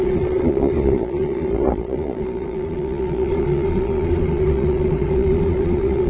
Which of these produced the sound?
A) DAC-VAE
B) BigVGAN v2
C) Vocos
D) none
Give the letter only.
C